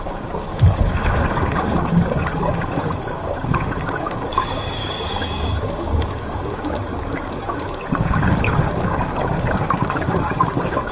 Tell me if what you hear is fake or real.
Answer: fake